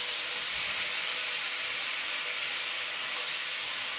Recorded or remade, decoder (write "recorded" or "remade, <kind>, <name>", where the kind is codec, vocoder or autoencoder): recorded